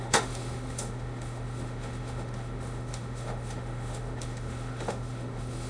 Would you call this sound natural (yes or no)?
no